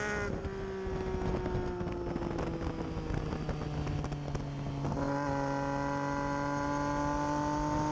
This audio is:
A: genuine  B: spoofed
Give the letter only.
A